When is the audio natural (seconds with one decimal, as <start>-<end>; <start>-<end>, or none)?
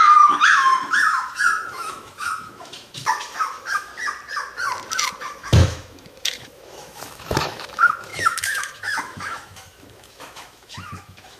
3.9-5.2